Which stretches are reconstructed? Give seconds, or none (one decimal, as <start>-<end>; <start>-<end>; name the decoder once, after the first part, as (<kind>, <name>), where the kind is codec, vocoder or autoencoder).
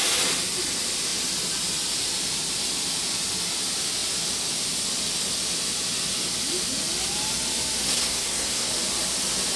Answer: 7.8-8.7 (codec, SNAC)